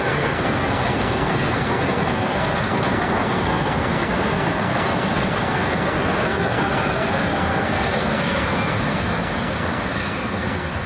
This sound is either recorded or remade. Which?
remade